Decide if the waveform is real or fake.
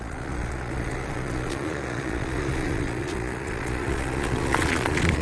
fake